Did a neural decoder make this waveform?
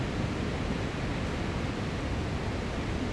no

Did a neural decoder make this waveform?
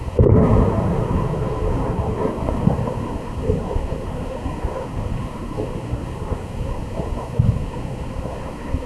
yes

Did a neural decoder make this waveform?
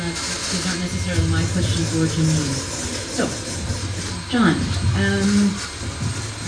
no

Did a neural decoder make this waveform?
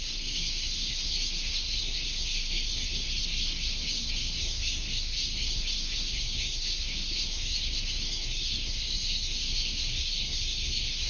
yes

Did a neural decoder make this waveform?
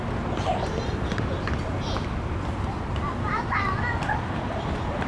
no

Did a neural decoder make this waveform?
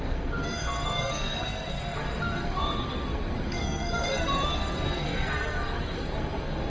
yes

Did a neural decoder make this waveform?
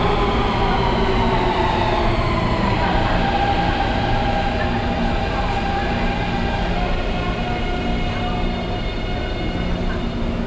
no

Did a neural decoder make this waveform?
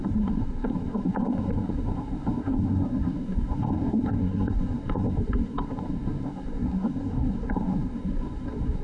yes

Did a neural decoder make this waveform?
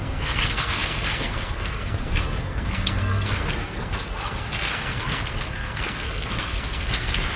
yes